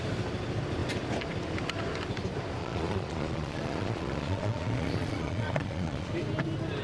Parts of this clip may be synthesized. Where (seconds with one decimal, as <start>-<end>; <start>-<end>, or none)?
2.6-6.1